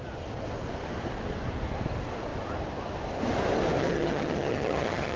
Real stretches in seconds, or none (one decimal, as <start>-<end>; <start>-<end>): 0.0-3.8